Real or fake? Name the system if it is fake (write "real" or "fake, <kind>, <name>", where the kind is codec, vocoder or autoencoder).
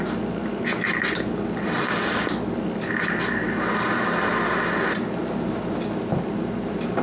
real